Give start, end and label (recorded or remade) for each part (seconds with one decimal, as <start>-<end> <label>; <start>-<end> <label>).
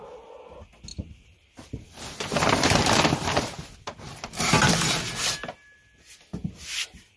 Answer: 0.0-0.9 recorded; 0.9-4.7 remade; 4.7-7.2 recorded